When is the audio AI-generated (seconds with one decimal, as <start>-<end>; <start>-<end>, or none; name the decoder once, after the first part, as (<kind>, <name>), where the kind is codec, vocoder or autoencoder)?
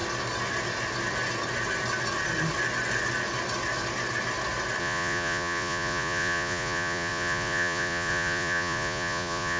4.8-9.6 (vocoder, Vocos)